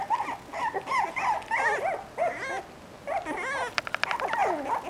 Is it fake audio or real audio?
real